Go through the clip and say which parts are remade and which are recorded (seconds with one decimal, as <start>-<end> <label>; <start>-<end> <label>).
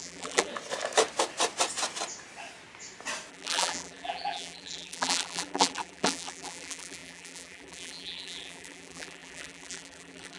0.0-0.5 remade; 0.5-3.3 recorded; 3.3-10.4 remade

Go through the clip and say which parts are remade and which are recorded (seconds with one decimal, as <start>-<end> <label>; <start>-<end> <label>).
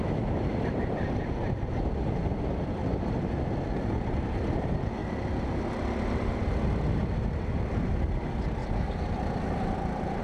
0.0-10.2 recorded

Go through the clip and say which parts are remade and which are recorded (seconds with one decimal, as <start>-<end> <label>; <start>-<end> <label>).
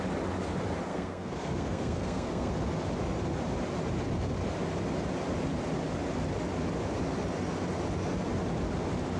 0.0-0.9 recorded; 0.9-2.5 remade; 2.5-9.2 recorded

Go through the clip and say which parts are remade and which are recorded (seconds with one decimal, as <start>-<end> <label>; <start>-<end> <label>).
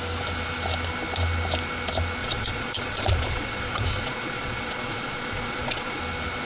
0.0-2.2 recorded; 2.2-6.0 remade; 6.0-6.4 recorded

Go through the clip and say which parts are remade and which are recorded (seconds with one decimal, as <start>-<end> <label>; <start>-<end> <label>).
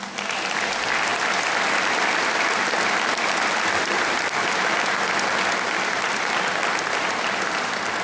0.0-8.0 recorded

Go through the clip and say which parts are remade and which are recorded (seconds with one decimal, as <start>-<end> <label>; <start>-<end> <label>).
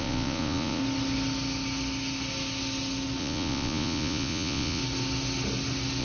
0.0-0.8 remade; 0.8-3.2 recorded; 3.2-4.8 remade; 4.8-6.0 recorded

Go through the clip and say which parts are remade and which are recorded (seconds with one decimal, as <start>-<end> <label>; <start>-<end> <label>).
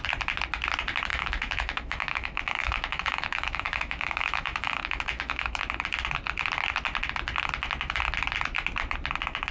0.0-1.1 recorded; 1.1-5.6 remade; 5.6-9.5 recorded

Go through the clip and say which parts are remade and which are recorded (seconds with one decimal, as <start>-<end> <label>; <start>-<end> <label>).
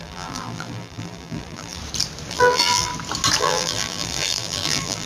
0.0-1.8 remade; 1.8-2.3 recorded; 2.3-2.9 remade; 2.9-3.4 recorded; 3.4-5.0 remade